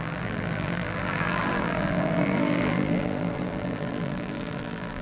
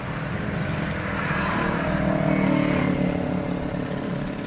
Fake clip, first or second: first